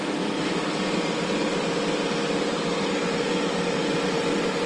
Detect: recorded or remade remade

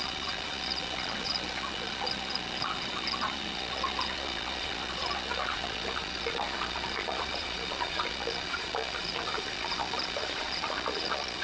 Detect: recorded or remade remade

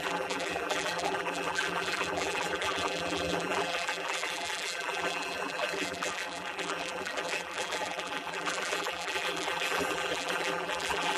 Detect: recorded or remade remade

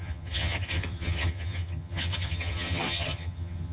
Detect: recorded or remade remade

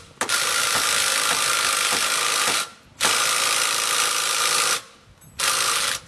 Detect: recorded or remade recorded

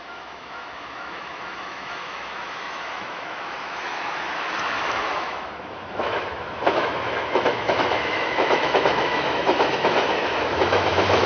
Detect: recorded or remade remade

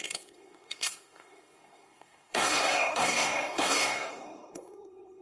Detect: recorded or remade remade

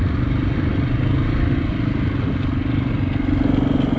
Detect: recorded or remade recorded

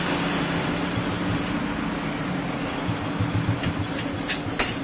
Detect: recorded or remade recorded